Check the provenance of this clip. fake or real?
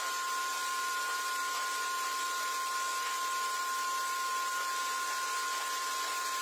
real